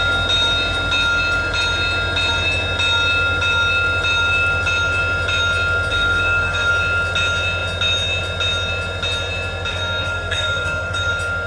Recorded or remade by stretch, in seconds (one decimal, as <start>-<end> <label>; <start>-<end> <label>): 0.0-5.9 recorded; 5.9-6.7 remade; 6.7-9.7 recorded; 9.7-11.1 remade; 11.1-11.5 recorded

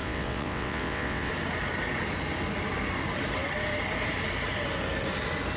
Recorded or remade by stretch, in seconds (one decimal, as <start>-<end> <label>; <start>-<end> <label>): 0.0-1.3 remade; 1.3-5.6 recorded

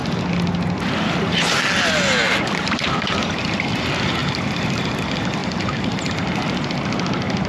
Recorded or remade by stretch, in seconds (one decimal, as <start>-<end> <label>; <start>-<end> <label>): 0.0-5.4 recorded; 5.4-6.1 remade; 6.1-7.5 recorded

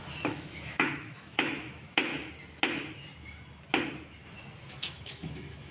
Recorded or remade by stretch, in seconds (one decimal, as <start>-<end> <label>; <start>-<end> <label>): 0.0-2.1 remade; 2.1-4.7 recorded; 4.7-5.7 remade

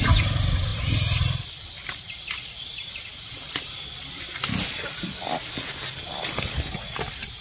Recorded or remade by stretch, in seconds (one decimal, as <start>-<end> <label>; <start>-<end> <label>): 0.0-7.4 recorded